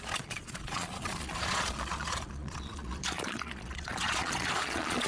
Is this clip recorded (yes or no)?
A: no